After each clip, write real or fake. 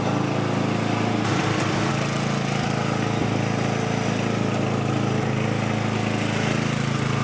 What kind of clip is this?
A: real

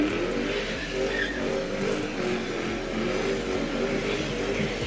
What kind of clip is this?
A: real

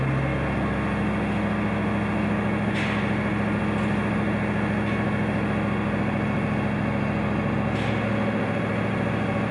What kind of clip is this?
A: real